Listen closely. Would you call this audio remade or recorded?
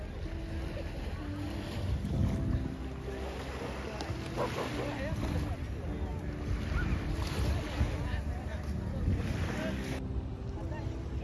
recorded